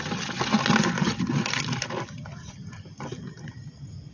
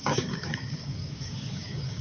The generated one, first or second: second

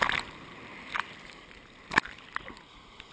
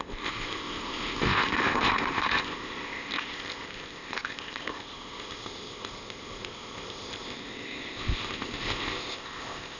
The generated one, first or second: second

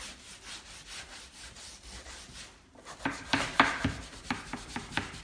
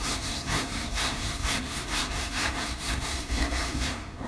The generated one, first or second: second